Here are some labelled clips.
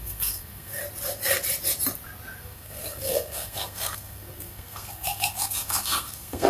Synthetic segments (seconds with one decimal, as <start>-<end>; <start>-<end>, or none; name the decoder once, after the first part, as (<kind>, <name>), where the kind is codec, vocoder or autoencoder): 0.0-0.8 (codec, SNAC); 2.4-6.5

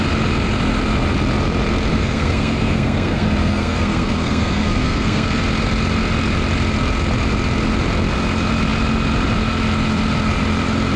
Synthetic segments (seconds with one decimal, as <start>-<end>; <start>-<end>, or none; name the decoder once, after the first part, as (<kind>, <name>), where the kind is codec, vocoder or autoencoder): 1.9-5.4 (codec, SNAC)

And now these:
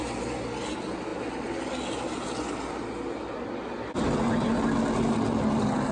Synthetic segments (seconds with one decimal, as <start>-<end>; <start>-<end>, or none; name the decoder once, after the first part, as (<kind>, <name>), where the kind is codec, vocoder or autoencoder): none

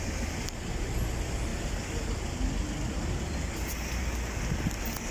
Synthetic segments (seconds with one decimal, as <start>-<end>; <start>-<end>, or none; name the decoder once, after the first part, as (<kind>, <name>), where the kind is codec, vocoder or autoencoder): none

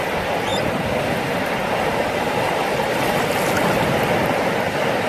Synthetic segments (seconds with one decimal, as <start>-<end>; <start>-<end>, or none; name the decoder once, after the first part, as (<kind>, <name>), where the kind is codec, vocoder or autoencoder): none

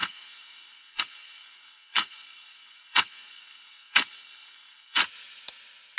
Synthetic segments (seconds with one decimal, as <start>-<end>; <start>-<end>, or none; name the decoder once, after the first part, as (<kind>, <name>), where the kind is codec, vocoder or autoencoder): 0.0-5.0 (codec, SNAC)